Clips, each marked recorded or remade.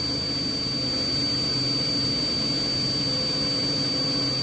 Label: recorded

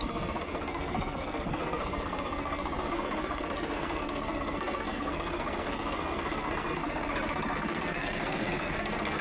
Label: remade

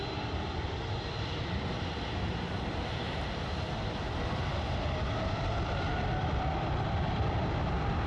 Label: remade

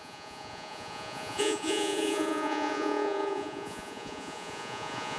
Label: remade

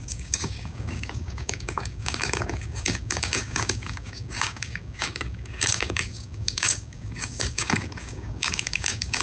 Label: remade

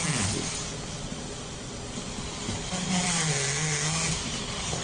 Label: recorded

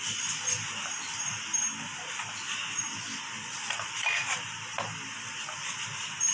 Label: recorded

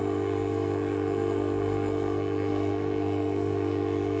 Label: remade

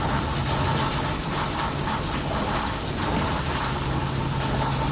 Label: recorded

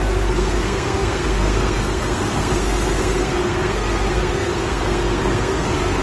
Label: remade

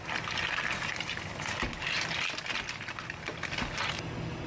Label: recorded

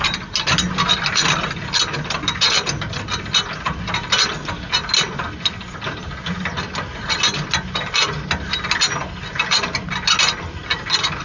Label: recorded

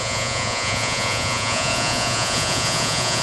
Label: remade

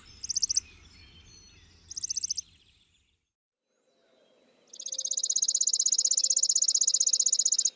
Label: recorded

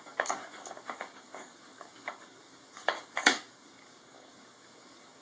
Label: remade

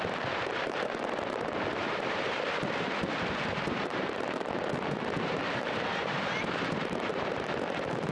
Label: remade